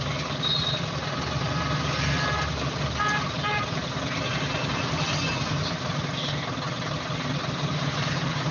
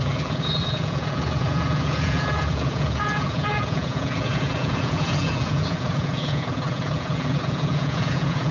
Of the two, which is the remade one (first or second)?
second